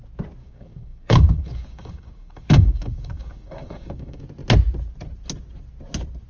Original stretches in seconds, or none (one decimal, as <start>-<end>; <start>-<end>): 0.0-0.4; 4.2-6.3